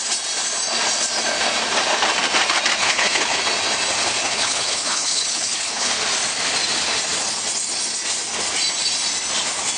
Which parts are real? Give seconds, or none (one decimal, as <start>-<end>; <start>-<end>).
0.0-2.8; 3.4-4.2; 5.9-9.8